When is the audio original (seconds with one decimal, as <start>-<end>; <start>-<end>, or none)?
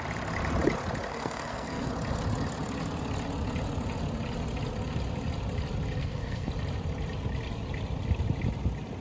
0.0-1.1; 1.9-6.0; 6.5-9.0